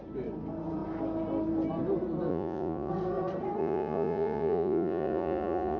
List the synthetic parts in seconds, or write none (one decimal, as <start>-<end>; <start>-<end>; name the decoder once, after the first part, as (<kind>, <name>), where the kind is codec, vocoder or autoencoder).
2.3-2.9 (vocoder, Vocos); 3.6-5.8